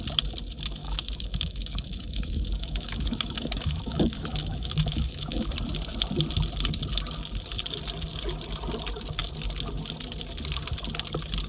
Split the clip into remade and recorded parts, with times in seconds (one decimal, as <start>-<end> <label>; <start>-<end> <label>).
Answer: 0.0-0.8 recorded; 0.8-5.5 remade; 5.5-11.5 recorded